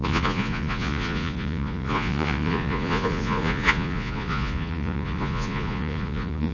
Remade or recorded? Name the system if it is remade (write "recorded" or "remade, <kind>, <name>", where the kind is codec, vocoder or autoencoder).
remade, vocoder, Vocos